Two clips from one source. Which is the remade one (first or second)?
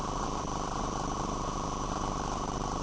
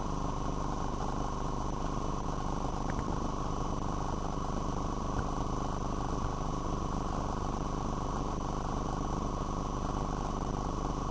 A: first